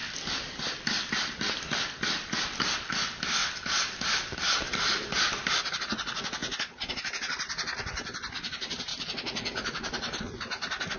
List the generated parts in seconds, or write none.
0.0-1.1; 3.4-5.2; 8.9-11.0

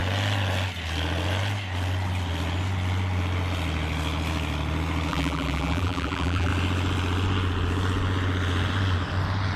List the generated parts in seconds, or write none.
5.1-6.5

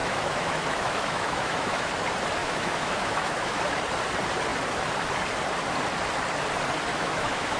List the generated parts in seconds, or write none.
0.0-1.9; 2.4-3.6; 6.9-7.6

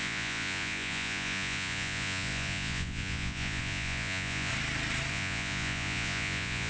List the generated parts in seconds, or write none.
0.0-4.5; 5.1-6.7

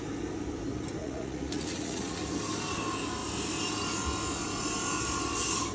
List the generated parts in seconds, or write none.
1.0-2.2